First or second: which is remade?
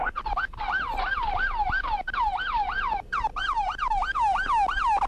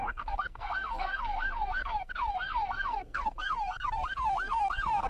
second